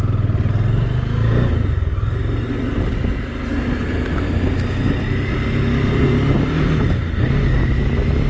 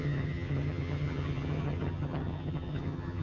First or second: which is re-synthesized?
second